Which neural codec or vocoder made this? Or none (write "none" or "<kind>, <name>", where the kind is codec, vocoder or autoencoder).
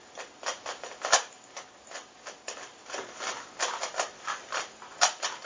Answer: none